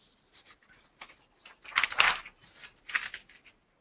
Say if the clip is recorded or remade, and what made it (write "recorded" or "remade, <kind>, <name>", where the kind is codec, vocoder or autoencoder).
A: recorded